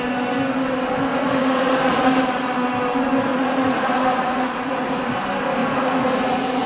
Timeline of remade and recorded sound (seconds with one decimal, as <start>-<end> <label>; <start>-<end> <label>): 0.0-1.1 recorded; 1.1-2.1 remade; 2.1-3.3 recorded; 3.3-5.1 remade; 5.1-5.6 recorded; 5.6-6.7 remade